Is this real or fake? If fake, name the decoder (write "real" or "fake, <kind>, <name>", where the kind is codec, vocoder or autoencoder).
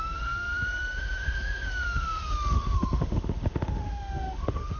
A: fake, autoencoder, DAC-VAE